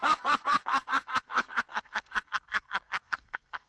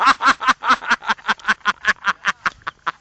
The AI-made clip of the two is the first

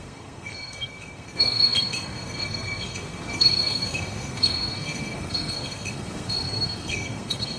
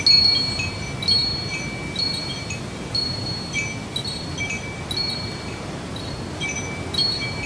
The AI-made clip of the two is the first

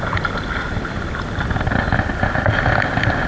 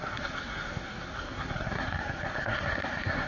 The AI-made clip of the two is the second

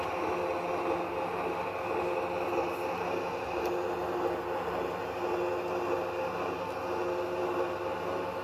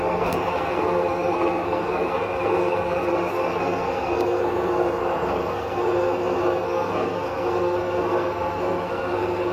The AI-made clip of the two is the second